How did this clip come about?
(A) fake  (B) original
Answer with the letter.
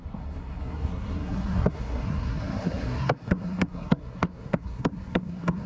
A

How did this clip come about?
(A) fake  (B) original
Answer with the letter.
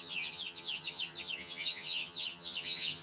A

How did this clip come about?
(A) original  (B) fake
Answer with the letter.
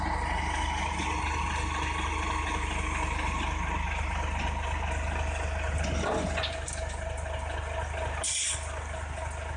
A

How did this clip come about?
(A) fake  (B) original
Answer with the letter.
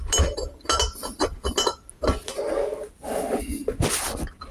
B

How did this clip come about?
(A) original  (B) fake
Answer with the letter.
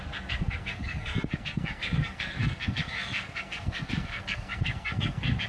B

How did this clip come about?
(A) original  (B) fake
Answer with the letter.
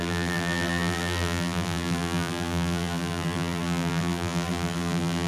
B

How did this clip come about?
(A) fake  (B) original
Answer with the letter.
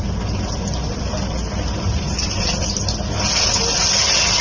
B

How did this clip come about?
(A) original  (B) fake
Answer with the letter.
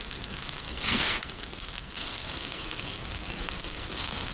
B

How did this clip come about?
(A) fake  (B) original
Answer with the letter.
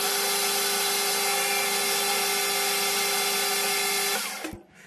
B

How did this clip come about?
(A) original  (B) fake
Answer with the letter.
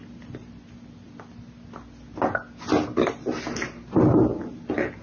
A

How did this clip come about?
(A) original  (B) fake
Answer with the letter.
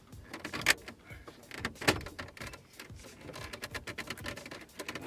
A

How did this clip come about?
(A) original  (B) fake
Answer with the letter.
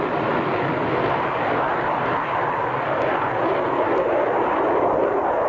A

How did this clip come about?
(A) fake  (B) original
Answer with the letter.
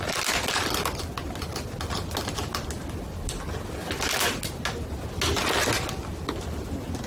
B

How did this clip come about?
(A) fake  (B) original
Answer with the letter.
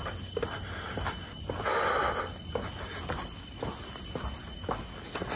B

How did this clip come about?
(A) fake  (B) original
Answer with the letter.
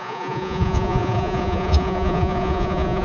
A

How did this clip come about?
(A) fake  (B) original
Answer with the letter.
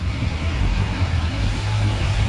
A